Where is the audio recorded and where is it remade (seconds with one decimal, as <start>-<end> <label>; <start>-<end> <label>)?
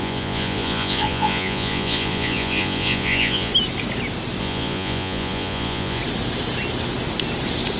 0.0-3.5 remade; 3.5-4.4 recorded; 4.4-6.0 remade; 6.0-7.8 recorded